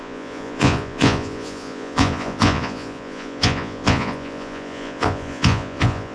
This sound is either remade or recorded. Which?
remade